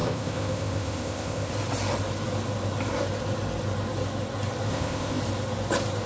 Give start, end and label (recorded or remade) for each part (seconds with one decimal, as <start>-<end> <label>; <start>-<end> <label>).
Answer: 0.0-1.5 remade; 1.5-4.7 recorded; 4.7-5.2 remade; 5.2-6.1 recorded

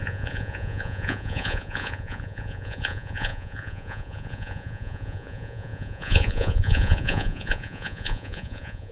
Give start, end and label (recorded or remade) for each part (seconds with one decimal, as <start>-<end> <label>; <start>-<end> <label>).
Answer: 0.0-8.9 remade

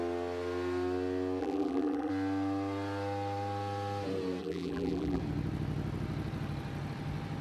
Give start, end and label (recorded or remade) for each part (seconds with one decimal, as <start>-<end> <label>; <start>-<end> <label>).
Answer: 0.0-1.4 recorded; 1.4-2.1 remade; 2.1-4.4 recorded; 4.4-5.2 remade; 5.2-7.4 recorded

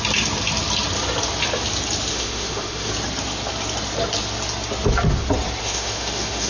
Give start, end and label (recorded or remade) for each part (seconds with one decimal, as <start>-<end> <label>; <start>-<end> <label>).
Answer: 0.0-2.1 recorded; 2.1-2.9 remade; 2.9-5.6 recorded; 5.6-6.5 remade

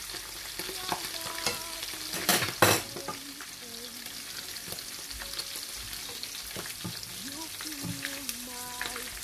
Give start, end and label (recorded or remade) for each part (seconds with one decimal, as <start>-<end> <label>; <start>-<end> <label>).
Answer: 0.0-9.2 recorded

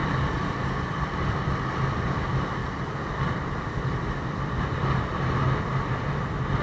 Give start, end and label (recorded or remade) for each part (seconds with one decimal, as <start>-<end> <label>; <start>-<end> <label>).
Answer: 0.0-2.2 recorded; 2.2-2.6 remade; 2.6-6.6 recorded

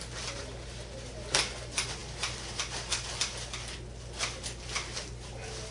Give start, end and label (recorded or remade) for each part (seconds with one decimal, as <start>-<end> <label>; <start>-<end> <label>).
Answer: 0.0-5.7 recorded

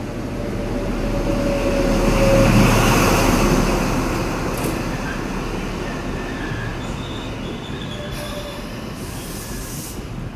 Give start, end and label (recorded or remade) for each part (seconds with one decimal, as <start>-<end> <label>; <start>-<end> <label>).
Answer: 0.0-10.4 recorded